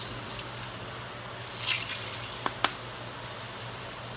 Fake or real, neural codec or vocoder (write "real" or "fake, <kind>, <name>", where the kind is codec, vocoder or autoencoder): real